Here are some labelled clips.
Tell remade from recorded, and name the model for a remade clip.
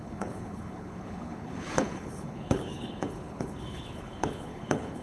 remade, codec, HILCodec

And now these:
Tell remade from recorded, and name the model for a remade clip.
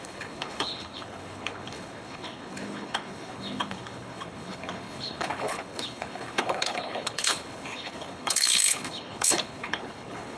remade, codec, HILCodec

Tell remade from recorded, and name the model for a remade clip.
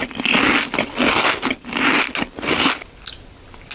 recorded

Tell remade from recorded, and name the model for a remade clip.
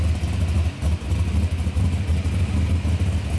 recorded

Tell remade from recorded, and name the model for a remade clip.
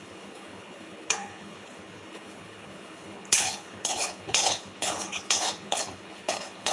remade, codec, HILCodec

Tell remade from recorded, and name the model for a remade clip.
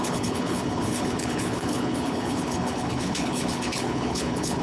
remade, codec, HILCodec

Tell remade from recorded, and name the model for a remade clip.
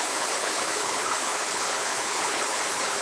remade, codec, HILCodec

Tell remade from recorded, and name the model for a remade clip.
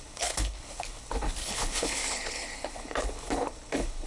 remade, codec, HILCodec